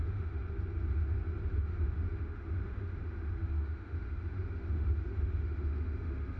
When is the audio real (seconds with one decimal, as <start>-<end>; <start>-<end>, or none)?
0.4-1.5